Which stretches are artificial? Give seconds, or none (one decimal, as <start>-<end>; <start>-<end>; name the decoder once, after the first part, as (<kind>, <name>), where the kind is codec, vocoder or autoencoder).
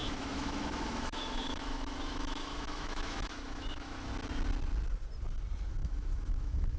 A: 0.0-4.1 (autoencoder, DAC-VAE); 5.8-6.8